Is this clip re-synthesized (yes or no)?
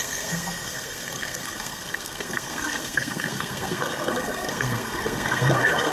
yes